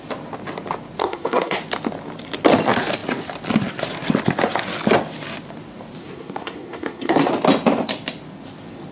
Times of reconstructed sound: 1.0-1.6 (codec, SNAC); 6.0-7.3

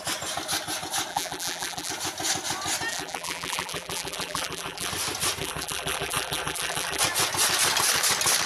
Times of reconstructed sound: 1.1-1.9 (vocoder, BigVGAN v2); 2.9-4.9; 5.4-7.0